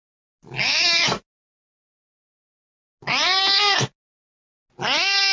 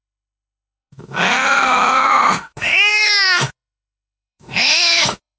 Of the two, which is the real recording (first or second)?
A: first